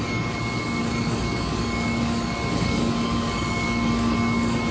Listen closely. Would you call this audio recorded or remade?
remade